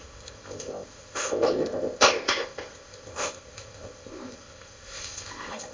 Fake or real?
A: fake